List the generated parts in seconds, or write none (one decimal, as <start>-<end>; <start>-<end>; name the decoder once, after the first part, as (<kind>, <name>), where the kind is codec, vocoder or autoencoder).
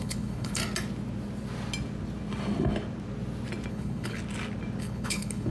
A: 0.0-0.6 (codec, HILCodec); 3.7-4.2; 4.8-5.5